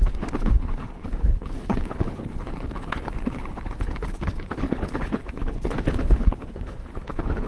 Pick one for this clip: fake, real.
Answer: fake